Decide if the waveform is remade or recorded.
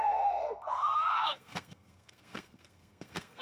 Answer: remade